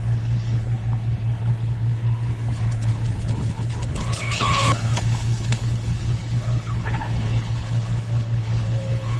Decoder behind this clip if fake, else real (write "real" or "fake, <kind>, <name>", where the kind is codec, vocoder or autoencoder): fake, codec, HILCodec